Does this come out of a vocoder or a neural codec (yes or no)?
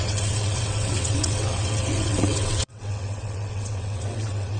yes